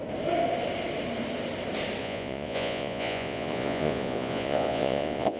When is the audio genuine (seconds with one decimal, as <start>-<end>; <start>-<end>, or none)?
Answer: 0.0-2.0